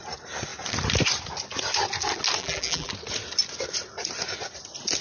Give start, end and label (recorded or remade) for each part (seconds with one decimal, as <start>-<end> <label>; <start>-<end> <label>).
0.0-2.4 recorded; 2.4-2.9 remade; 2.9-5.0 recorded